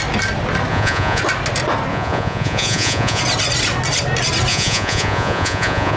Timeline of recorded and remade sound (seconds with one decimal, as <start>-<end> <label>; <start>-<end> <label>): 0.0-0.7 recorded; 0.7-1.2 remade; 1.2-1.9 recorded; 1.9-3.2 remade; 3.2-4.5 recorded; 4.5-6.0 remade